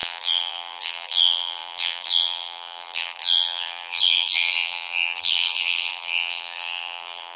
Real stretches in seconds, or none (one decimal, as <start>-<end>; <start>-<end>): none